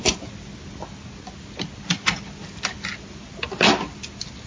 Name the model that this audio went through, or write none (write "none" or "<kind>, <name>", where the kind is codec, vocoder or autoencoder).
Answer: none